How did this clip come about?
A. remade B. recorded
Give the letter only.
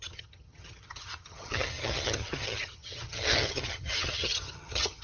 A